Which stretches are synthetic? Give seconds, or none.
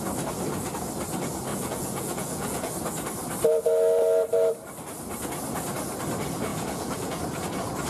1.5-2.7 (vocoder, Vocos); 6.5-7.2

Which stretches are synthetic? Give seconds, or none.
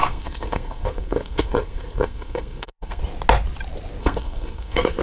0.0-3.0 (codec, SNAC); 4.0-5.0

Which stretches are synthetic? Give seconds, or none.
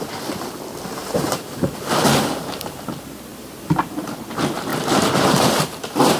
0.9-2.9 (vocoder, BigVGAN v2); 3.3-4.1; 4.7-5.8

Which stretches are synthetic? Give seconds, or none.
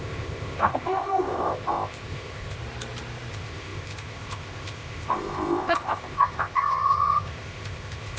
0.0-2.6 (codec, ZipCodec); 3.3-8.2